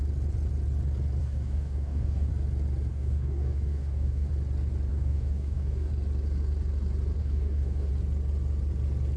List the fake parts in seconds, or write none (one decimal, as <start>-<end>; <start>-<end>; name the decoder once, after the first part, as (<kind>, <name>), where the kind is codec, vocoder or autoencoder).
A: 1.2-2.3 (codec, DAC); 2.9-4.3; 4.9-5.9; 7.2-7.9